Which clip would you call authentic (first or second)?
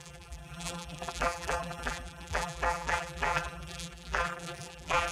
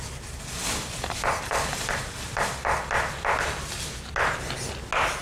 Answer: second